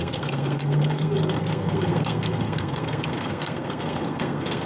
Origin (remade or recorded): remade